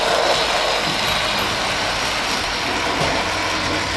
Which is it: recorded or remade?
recorded